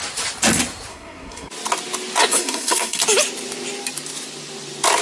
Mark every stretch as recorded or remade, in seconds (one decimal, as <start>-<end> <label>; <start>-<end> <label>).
0.0-0.9 recorded; 0.9-1.5 remade; 1.5-2.3 recorded; 2.3-3.0 remade; 3.0-5.0 recorded